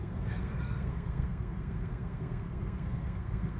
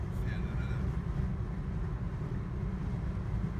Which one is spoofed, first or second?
first